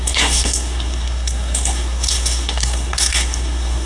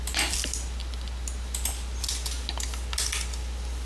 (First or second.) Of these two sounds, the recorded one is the second